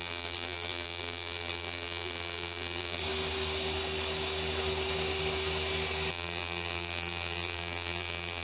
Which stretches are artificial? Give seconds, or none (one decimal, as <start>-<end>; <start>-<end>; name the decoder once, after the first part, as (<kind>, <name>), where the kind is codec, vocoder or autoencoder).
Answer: 0.0-3.0 (vocoder, BigVGAN v2); 6.1-8.4